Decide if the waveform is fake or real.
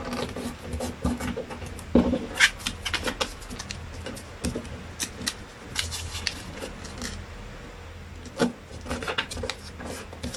real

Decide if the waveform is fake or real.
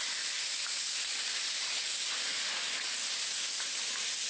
real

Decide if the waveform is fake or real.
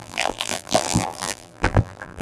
fake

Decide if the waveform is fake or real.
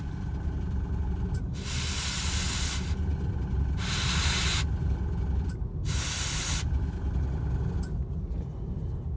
real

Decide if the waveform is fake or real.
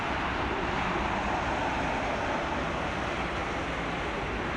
real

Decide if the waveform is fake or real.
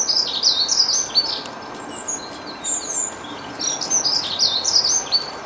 real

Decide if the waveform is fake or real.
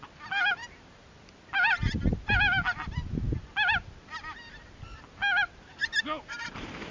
real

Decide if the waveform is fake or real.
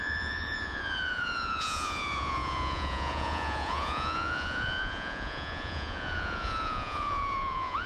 fake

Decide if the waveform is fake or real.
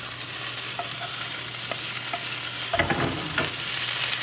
real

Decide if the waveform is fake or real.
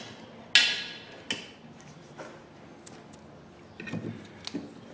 real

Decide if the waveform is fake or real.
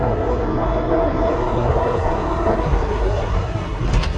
fake